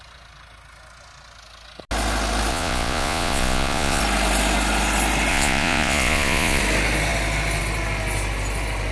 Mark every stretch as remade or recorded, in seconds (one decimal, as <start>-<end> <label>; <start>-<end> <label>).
0.0-2.5 recorded; 2.5-4.0 remade; 4.0-5.3 recorded; 5.3-6.6 remade; 6.6-8.9 recorded